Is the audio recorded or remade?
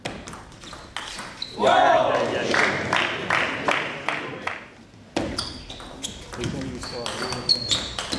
recorded